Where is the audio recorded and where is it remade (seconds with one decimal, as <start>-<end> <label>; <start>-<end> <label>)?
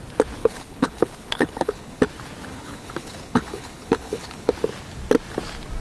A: 0.0-0.4 recorded; 0.4-2.0 remade; 2.0-2.5 recorded; 2.5-4.5 remade; 4.5-5.8 recorded